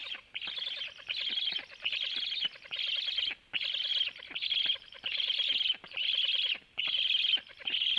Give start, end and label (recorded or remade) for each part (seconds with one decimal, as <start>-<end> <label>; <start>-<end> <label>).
0.0-8.0 recorded